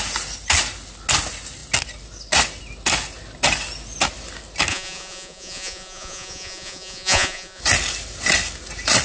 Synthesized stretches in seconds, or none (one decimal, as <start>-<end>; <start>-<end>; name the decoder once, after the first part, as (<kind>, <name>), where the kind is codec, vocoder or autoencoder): 4.7-7.6 (vocoder, Vocos)